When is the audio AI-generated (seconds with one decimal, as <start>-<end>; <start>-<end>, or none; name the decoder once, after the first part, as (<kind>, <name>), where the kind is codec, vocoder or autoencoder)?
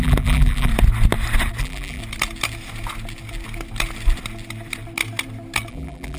0.0-0.7 (vocoder, BigVGAN v2); 1.6-2.0; 5.7-6.2